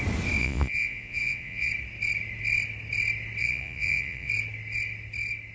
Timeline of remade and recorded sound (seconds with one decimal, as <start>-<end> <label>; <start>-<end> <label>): 0.0-0.4 recorded; 0.4-1.7 remade; 1.7-3.4 recorded; 3.4-4.3 remade; 4.3-5.5 recorded